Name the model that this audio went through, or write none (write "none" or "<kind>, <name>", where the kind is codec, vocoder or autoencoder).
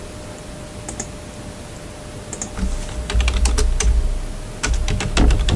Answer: none